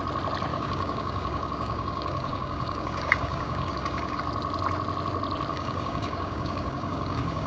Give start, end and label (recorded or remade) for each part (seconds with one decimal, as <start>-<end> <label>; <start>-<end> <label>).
0.0-0.5 recorded; 0.5-4.2 remade; 4.2-5.5 recorded; 5.5-7.5 remade